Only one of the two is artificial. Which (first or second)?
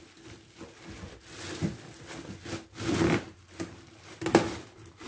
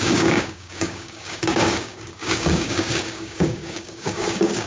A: second